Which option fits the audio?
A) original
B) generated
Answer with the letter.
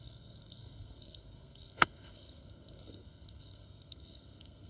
B